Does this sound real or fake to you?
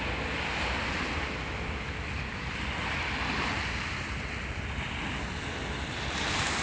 fake